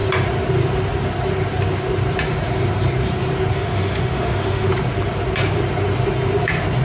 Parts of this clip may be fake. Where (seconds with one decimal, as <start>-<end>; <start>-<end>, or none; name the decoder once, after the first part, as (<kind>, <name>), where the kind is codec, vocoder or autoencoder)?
3.5-4.7 (autoencoder, DAC-VAE)